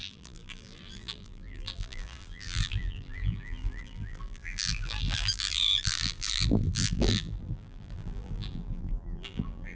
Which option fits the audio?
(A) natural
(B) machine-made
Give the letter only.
B